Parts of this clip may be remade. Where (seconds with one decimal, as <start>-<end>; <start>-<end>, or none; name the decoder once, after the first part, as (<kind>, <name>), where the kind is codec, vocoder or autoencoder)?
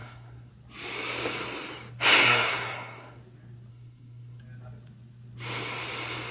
0.0-0.5 (codec, SNAC); 2.2-3.2; 3.7-4.4